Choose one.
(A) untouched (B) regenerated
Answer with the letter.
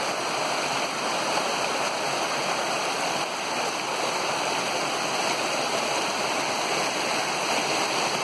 A